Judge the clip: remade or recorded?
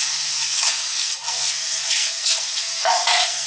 remade